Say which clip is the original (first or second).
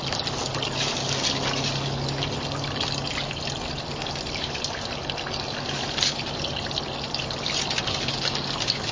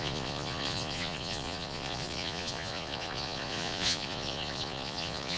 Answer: first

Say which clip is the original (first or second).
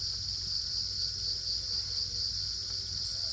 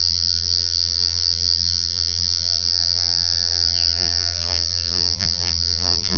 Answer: first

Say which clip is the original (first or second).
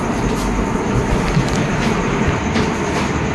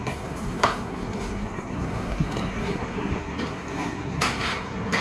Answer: first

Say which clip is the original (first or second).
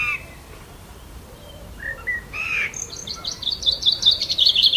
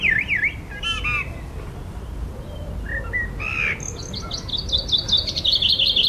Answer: second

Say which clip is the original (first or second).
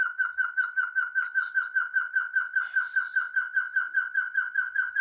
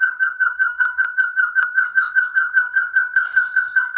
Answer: first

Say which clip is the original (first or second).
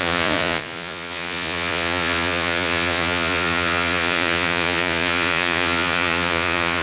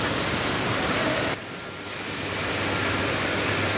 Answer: second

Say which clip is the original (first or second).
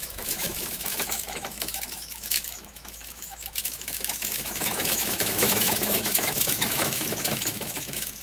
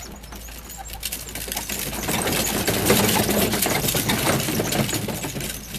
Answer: second